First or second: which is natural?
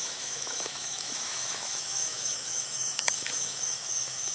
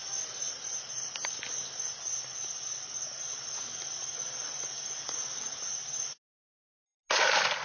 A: second